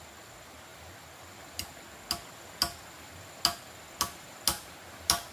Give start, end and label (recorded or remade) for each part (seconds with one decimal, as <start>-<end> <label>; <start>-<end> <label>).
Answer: 0.0-5.3 recorded